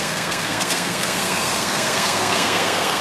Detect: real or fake fake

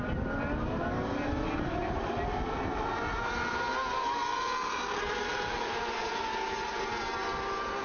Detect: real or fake real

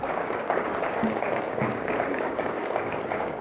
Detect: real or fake fake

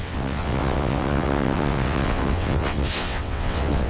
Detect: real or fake fake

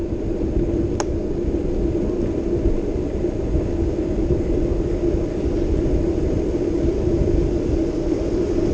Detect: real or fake real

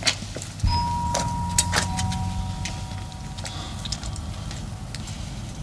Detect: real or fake real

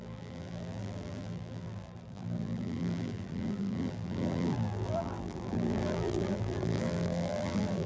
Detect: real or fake fake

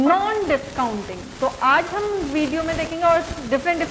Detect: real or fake real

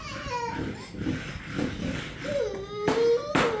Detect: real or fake real